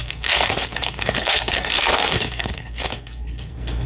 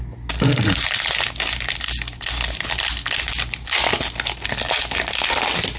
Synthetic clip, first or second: first